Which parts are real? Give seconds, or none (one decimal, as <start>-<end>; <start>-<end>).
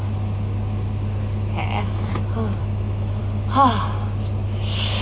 0.0-1.6; 2.1-2.6; 3.2-5.0